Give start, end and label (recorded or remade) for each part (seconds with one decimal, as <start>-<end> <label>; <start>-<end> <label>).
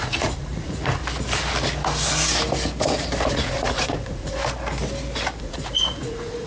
0.0-1.0 remade; 1.0-3.3 recorded; 3.3-4.4 remade; 4.4-5.4 recorded; 5.4-6.5 remade